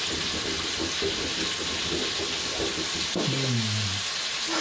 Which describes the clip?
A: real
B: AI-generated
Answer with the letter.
A